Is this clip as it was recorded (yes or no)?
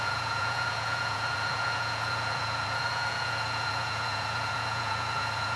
no